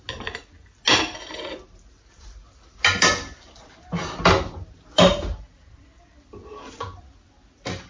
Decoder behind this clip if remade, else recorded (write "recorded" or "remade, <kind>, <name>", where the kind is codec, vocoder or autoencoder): recorded